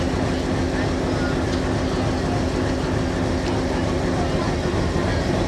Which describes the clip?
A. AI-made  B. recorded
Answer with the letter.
B